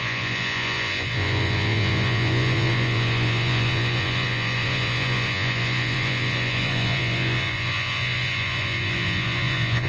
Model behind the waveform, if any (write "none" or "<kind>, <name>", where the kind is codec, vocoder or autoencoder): vocoder, Vocos